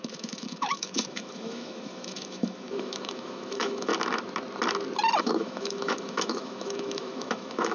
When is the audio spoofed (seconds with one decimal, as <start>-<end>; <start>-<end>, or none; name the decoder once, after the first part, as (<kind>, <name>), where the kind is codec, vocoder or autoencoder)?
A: 0.0-3.9 (autoencoder, DAC-VAE); 5.2-7.7